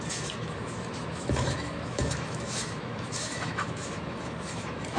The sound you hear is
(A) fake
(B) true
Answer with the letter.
A